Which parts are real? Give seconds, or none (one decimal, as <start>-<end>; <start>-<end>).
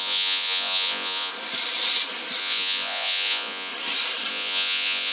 1.3-2.4; 3.7-4.3